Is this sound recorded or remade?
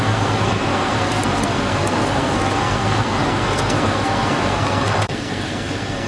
remade